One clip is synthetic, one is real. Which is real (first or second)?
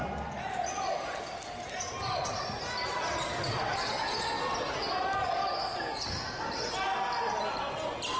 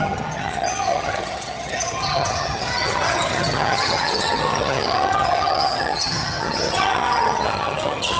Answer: first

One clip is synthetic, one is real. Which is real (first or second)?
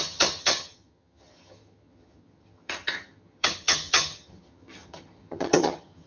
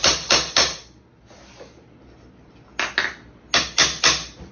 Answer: second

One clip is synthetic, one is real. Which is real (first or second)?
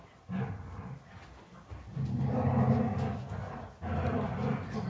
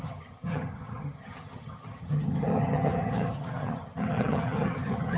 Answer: first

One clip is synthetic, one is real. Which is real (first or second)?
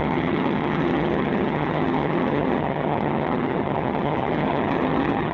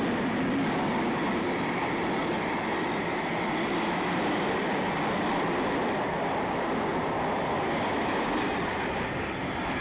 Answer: second